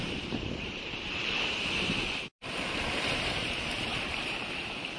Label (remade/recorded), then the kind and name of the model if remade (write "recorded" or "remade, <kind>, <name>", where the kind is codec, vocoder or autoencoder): remade, vocoder, BigVGAN v2